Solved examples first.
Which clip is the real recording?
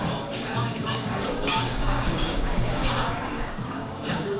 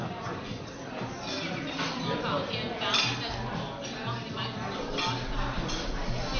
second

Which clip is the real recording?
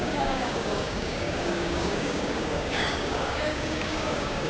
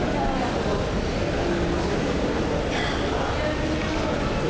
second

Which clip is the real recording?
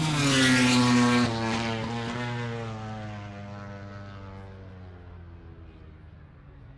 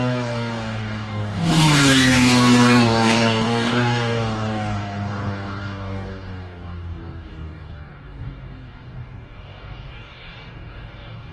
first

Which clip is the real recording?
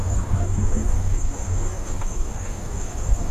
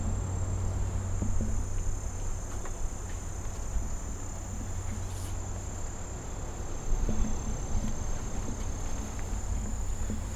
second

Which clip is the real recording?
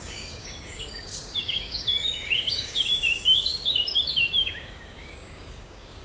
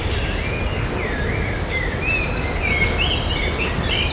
second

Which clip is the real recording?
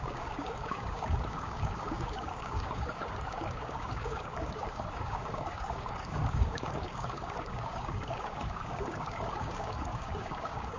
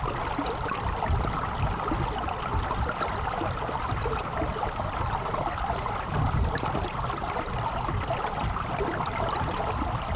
second